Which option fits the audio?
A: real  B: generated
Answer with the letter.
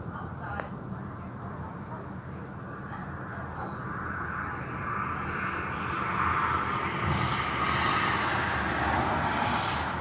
A